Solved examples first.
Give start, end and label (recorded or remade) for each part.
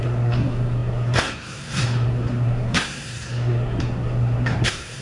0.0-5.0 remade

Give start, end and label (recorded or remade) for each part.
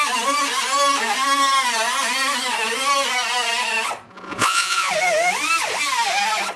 0.0-4.1 recorded; 4.1-4.9 remade; 4.9-6.6 recorded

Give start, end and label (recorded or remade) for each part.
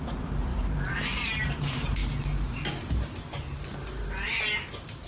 0.0-2.0 remade; 2.0-4.4 recorded; 4.4-5.1 remade